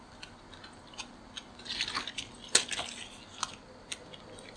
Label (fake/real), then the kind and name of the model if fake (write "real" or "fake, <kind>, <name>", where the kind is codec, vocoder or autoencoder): real